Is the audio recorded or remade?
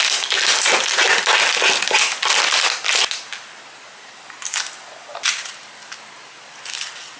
recorded